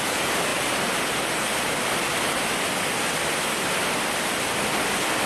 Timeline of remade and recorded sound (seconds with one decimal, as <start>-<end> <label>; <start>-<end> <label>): 0.0-5.3 recorded